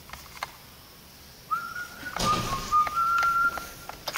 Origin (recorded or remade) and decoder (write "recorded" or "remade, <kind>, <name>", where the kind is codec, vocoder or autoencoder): recorded